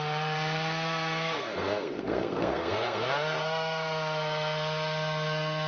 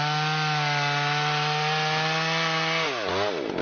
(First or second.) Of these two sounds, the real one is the second